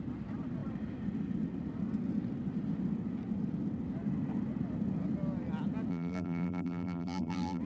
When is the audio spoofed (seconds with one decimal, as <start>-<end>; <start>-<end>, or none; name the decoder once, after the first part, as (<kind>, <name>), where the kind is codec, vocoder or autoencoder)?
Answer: 5.9-7.6 (vocoder, BigVGAN v2)